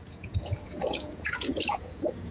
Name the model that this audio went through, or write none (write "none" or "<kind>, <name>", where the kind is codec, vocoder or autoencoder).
vocoder, Vocos